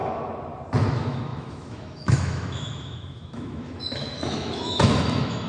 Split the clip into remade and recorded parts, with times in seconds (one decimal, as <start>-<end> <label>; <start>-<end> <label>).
0.0-0.9 recorded; 0.9-5.5 remade